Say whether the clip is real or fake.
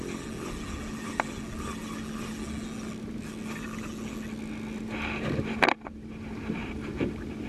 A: real